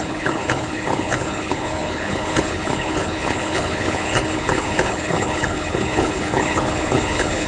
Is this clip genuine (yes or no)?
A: no